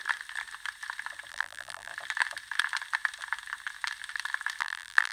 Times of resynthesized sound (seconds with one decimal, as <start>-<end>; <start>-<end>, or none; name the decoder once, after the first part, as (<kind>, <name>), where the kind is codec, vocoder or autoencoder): 1.3-1.9 (vocoder, BigVGAN v2); 4.6-5.1